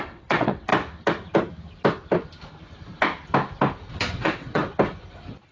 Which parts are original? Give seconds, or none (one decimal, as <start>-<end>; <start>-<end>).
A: 0.7-3.9; 4.6-5.5